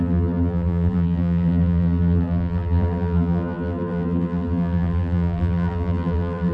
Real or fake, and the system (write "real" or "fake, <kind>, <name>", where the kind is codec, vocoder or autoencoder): fake, vocoder, BigVGAN v2